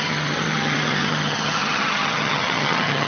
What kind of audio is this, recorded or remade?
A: remade